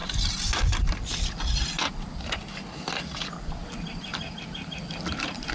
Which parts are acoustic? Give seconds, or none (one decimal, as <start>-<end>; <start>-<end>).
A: 0.0-5.5